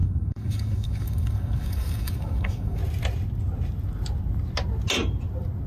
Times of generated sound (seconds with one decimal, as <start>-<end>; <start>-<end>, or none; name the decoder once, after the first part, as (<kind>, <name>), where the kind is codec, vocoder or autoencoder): 0.0-2.8 (codec, DAC)